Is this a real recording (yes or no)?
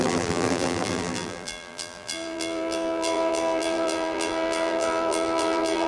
no